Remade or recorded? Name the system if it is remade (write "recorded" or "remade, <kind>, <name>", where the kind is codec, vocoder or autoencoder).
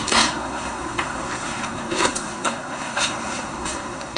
remade, codec, SNAC